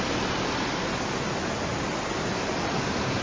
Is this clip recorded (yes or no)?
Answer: yes